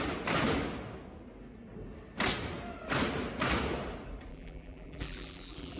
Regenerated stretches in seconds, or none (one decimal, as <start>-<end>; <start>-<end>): 4.3-5.8